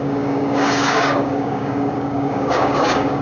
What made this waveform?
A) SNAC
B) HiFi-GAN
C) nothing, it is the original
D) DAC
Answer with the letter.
D